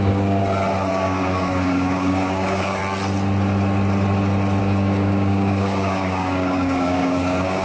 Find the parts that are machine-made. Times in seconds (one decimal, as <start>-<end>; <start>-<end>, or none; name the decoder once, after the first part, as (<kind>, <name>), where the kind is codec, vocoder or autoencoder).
0.0-0.4 (codec, DAC); 0.9-2.8; 4.6-7.6